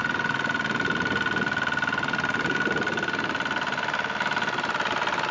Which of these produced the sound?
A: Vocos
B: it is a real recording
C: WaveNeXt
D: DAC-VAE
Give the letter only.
B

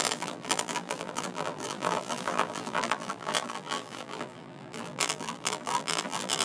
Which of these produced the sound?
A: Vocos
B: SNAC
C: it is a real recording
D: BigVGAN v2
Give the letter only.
D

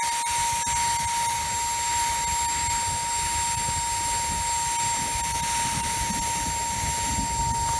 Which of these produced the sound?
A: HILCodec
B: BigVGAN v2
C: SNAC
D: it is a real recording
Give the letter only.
D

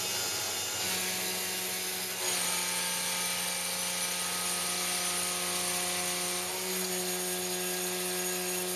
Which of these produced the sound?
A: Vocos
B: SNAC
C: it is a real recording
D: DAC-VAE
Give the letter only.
C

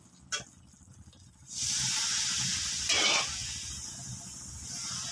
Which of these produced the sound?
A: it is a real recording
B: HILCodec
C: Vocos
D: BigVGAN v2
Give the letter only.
A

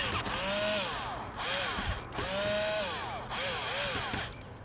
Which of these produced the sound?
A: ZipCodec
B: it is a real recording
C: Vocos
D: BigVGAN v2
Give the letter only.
B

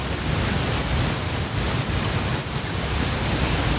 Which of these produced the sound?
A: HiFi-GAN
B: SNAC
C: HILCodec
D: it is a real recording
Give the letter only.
D